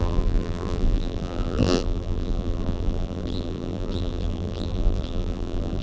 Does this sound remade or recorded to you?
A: remade